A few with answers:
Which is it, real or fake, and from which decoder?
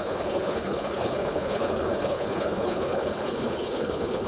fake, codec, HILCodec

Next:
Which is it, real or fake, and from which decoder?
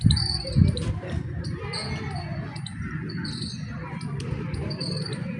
real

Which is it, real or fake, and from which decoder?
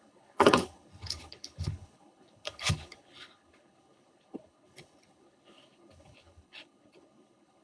fake, codec, HILCodec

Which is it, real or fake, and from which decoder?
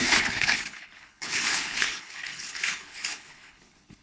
fake, codec, HILCodec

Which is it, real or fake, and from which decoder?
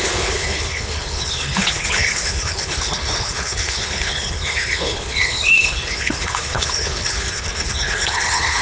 fake, codec, HILCodec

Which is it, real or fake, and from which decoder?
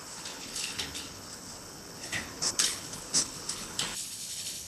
fake, codec, HILCodec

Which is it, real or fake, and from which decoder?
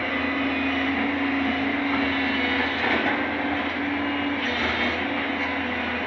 real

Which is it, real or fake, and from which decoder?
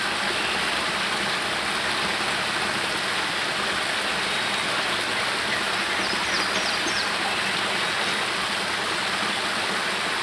real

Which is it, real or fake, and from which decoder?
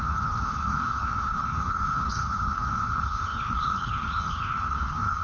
fake, codec, HILCodec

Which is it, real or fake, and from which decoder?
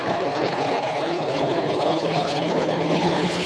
fake, codec, HILCodec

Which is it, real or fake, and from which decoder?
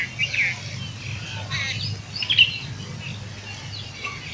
real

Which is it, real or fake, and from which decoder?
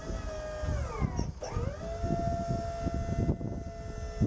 real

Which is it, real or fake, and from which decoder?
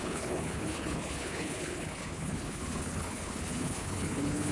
fake, codec, HILCodec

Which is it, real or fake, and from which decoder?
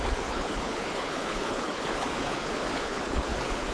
fake, codec, HILCodec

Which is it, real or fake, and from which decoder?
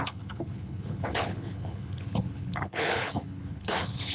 fake, codec, HILCodec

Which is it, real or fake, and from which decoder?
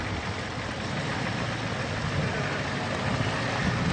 real